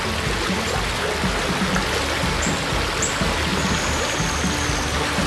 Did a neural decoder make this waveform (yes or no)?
no